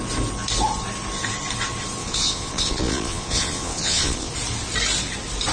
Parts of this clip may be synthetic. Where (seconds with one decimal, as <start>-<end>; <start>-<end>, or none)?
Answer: 2.0-4.3